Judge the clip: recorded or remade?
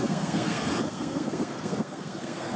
remade